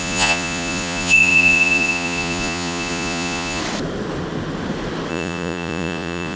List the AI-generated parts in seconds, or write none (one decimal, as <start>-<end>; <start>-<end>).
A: 0.0-3.6; 5.1-6.4